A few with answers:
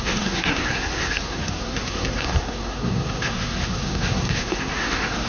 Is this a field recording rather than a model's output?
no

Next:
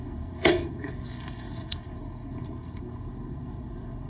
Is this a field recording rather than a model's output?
no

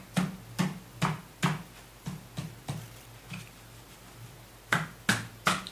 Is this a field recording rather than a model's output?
yes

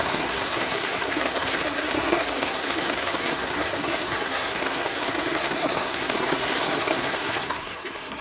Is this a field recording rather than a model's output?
no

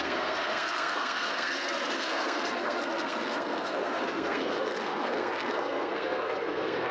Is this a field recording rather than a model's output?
no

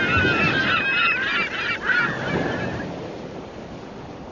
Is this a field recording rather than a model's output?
yes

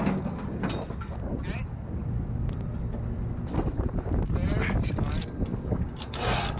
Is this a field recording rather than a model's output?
yes